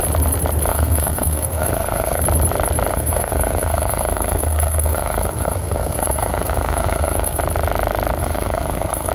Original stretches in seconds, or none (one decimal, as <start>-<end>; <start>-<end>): 0.0-0.7; 2.2-2.9; 7.4-8.2

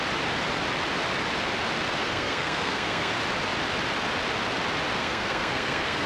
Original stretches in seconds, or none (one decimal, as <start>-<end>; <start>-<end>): 0.0-2.0; 3.1-5.0

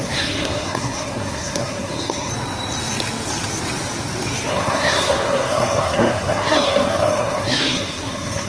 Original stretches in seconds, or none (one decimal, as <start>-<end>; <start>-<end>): 2.3-4.5

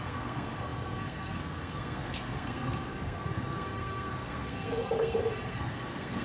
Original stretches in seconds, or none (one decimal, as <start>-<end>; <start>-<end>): none

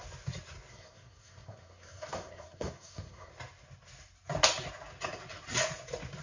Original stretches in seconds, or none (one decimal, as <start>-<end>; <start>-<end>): 0.0-0.7; 3.3-6.2

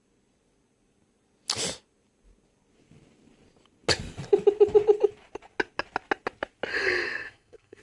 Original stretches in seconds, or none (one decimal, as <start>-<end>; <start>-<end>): 0.0-6.7

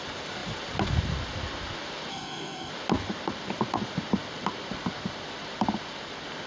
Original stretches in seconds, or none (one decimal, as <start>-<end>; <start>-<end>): 0.0-2.1; 2.7-6.5